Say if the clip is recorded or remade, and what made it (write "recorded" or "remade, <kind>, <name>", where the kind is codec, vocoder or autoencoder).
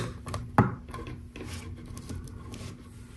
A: recorded